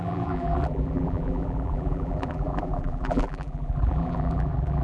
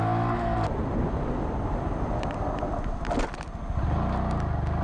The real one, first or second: second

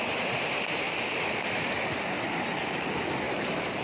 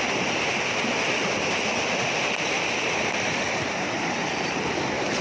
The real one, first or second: first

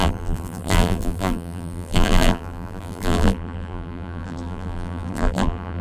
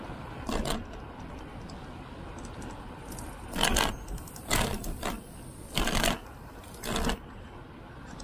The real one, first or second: second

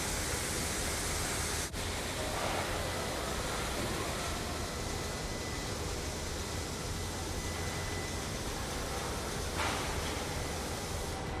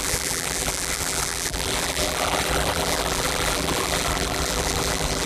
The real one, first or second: first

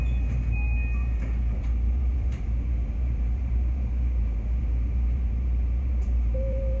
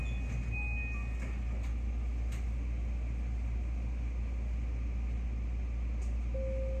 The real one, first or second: second